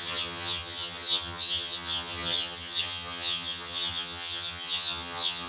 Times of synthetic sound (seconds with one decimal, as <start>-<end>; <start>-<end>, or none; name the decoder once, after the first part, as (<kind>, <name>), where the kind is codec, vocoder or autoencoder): 0.0-5.5 (vocoder, HiFi-GAN)